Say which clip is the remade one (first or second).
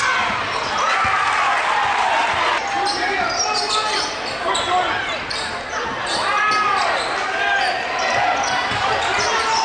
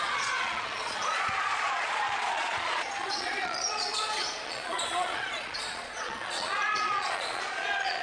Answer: second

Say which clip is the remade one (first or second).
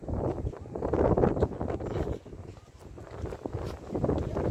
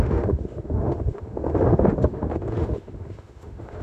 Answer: second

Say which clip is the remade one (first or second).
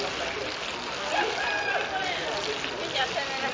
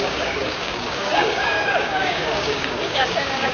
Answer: second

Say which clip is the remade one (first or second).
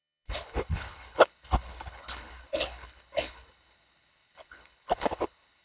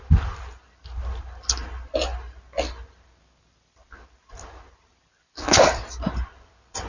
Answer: first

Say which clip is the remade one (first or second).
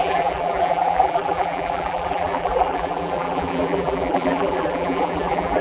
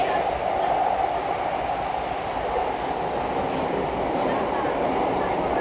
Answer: first